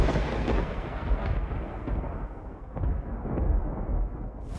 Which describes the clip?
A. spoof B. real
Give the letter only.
A